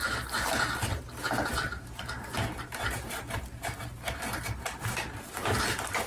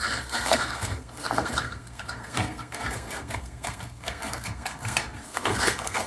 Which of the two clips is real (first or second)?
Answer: first